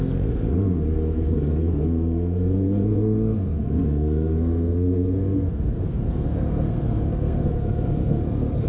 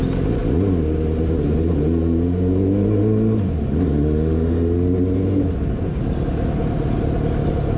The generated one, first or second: first